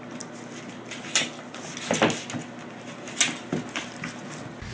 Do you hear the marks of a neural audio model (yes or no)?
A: no